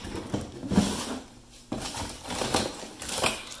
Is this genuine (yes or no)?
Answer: yes